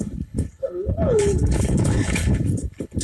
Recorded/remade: remade